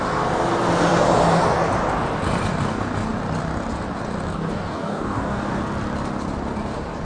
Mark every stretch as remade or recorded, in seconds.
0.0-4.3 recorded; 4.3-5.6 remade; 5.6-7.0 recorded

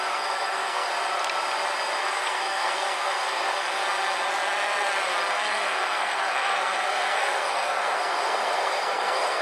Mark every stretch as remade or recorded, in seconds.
0.0-0.9 remade; 0.9-2.0 recorded; 2.0-3.8 remade; 3.8-5.3 recorded; 5.3-9.4 remade

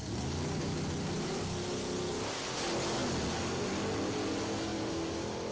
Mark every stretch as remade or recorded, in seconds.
0.0-5.5 recorded

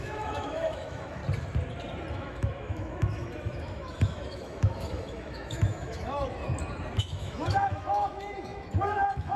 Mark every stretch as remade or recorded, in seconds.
0.0-1.2 remade; 1.2-2.1 recorded; 2.1-6.4 remade; 6.4-7.0 recorded; 7.0-9.4 remade

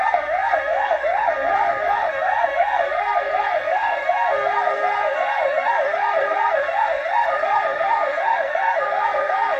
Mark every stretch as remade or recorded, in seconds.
0.0-9.6 remade

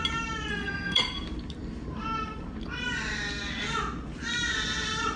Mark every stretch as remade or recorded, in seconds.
0.0-0.5 recorded; 0.5-1.0 remade; 1.0-5.2 recorded

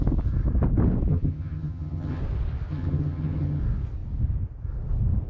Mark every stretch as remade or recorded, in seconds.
0.0-1.1 recorded; 1.1-2.2 remade; 2.2-2.7 recorded; 2.7-3.6 remade; 3.6-5.3 recorded